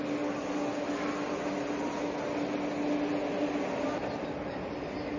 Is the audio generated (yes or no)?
no